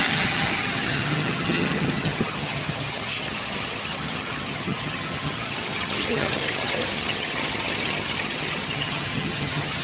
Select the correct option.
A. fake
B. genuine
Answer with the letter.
A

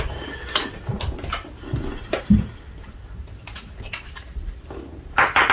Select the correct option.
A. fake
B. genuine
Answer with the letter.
B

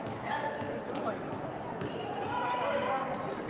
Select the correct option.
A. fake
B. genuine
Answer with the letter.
B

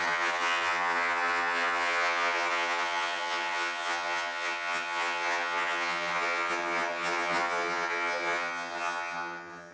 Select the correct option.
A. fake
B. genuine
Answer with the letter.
A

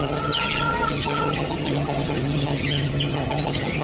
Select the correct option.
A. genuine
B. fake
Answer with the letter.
B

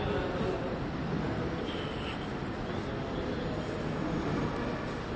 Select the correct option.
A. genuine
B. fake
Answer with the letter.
A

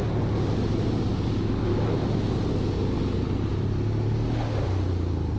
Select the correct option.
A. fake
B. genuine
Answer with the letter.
B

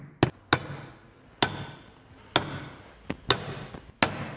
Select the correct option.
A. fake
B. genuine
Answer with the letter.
B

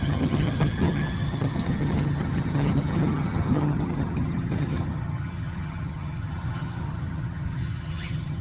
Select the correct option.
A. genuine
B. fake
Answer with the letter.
B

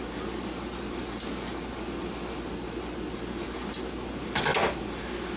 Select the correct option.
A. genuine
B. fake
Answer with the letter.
A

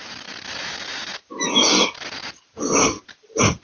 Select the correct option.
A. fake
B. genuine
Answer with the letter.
B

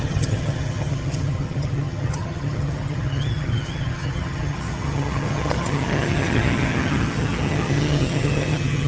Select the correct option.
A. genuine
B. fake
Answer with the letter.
B